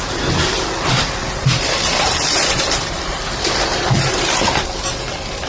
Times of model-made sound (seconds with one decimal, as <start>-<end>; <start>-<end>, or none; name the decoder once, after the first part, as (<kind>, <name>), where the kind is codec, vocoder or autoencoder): 1.2-4.3 (vocoder, BigVGAN v2)